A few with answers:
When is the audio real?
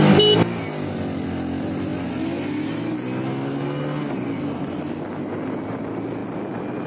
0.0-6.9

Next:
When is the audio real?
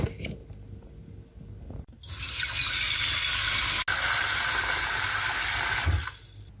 0.0-6.6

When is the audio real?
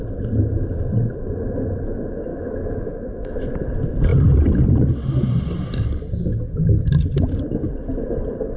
0.0-2.3; 3.4-6.3; 6.9-8.6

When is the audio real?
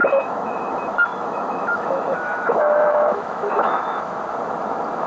0.7-1.1; 4.2-5.1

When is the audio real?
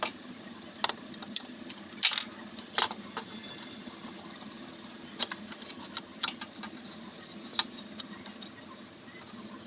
0.0-9.7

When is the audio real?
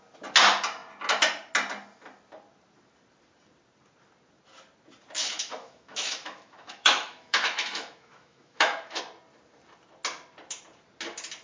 0.0-5.2; 9.0-11.4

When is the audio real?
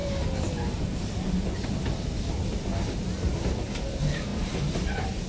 0.0-5.3